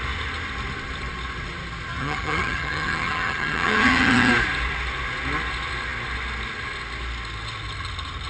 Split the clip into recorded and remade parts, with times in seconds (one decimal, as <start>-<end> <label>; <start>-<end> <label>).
0.0-1.9 recorded; 1.9-4.3 remade; 4.3-8.3 recorded